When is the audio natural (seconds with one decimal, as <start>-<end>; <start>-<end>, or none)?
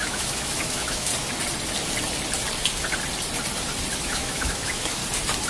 1.1-3.9; 5.0-5.5